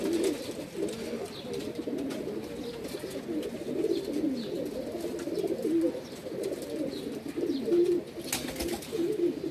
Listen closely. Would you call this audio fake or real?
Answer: real